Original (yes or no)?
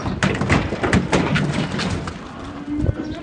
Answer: yes